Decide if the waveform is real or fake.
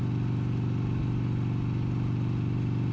real